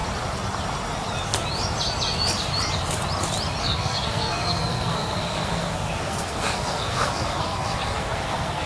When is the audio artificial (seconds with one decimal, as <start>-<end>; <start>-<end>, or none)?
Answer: 3.6-8.7